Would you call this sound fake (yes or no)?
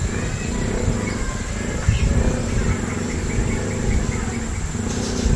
no